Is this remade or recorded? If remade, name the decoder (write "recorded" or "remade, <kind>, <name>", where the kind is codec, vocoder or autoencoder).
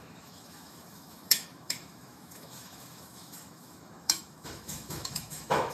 remade, autoencoder, DAC-VAE